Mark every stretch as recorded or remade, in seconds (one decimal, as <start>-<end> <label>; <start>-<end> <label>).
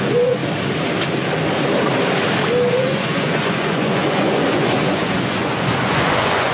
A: 0.0-0.4 remade; 0.4-2.7 recorded; 2.7-6.5 remade